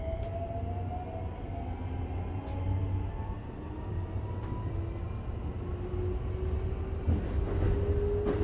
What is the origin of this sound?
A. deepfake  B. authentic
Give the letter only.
B